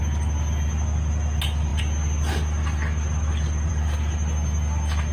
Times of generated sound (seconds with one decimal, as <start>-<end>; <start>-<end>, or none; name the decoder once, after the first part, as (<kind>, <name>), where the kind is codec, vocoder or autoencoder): none